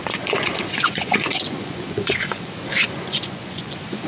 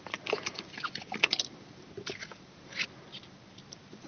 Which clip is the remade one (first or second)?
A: first